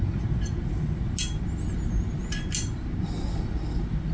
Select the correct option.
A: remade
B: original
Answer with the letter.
B